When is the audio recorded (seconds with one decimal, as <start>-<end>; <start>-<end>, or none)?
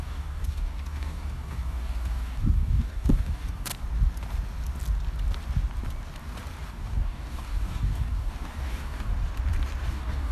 3.7-6.7; 9.1-9.9